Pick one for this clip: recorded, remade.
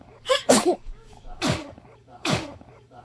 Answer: remade